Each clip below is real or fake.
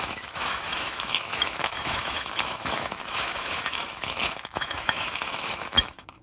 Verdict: fake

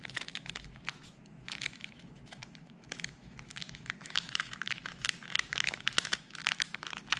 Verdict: fake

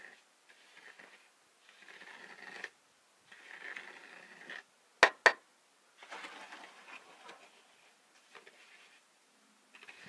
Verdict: real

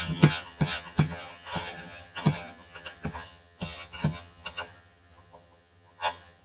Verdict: fake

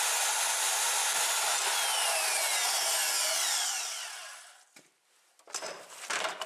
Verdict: real